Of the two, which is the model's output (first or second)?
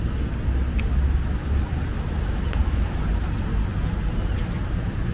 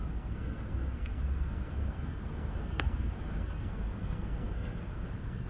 second